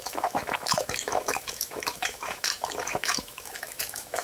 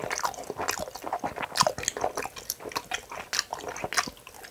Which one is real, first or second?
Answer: second